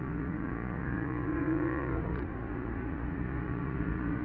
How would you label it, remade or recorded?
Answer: remade